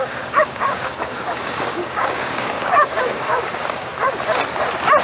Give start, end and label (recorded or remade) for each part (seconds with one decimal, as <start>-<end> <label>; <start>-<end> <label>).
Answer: 0.0-3.9 remade; 3.9-5.0 recorded